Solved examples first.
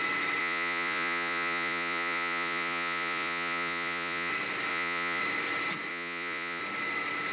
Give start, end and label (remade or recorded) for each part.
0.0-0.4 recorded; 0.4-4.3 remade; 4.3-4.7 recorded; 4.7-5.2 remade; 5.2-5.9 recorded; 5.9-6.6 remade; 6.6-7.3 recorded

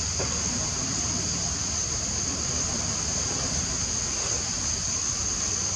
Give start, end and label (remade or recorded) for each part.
0.0-5.8 recorded

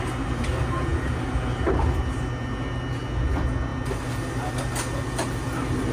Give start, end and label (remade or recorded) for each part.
0.0-5.9 recorded

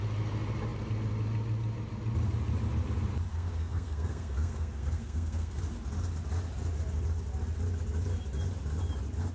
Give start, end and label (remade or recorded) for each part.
0.0-3.3 recorded; 3.3-5.6 remade; 5.6-9.3 recorded